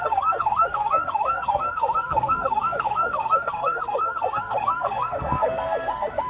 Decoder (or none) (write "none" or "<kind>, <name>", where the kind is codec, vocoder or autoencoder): codec, SNAC